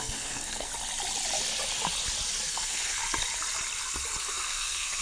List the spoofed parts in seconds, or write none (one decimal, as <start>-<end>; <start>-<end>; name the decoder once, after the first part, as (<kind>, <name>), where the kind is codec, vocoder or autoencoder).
0.0-0.7 (codec, SNAC); 2.5-3.0; 4.2-5.0